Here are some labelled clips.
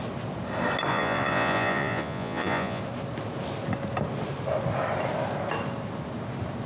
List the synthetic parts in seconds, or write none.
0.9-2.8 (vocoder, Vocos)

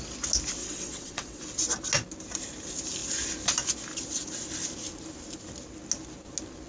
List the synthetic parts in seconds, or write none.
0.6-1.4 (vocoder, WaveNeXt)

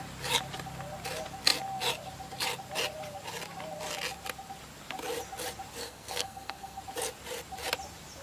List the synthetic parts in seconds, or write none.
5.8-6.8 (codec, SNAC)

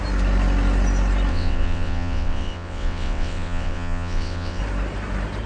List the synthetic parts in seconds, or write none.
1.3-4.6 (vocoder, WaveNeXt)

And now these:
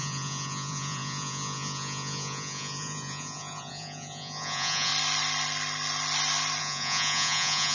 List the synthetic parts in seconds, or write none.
0.0-4.9 (vocoder, Vocos); 6.6-7.7

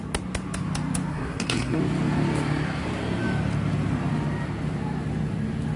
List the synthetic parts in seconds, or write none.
1.1-1.8 (codec, SNAC)